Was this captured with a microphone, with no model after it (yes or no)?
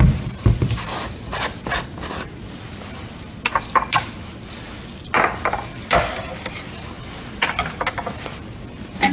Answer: yes